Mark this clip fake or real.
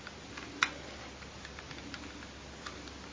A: real